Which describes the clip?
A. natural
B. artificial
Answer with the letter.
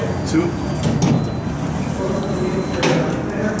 A